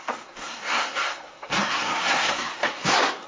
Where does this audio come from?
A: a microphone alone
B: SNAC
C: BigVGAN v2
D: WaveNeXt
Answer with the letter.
B